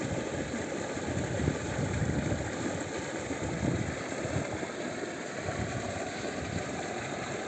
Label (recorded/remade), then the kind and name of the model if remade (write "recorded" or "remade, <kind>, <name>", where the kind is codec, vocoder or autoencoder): remade, vocoder, BigVGAN v2